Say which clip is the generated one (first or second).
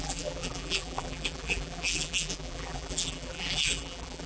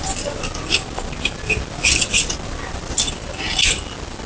first